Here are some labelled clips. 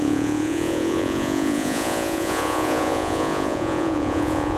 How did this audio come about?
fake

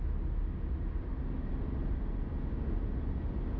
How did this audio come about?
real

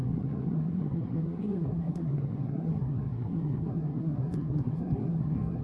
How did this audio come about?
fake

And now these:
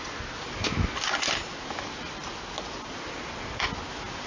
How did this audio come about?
real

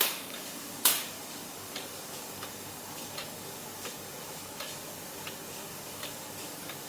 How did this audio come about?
fake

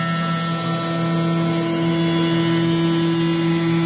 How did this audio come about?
real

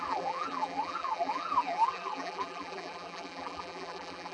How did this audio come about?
fake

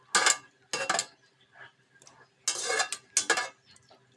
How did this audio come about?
real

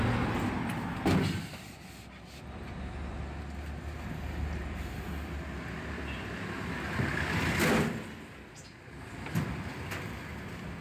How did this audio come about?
real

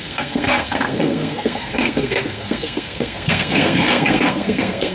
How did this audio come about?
fake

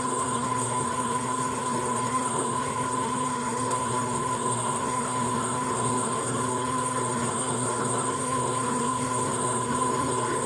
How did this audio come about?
fake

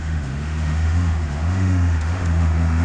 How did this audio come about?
fake